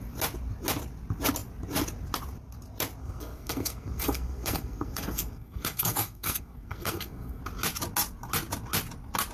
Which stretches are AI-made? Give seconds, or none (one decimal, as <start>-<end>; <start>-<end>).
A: 3.0-7.4